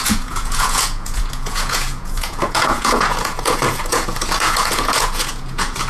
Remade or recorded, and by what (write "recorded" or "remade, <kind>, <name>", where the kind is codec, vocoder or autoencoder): remade, vocoder, Vocos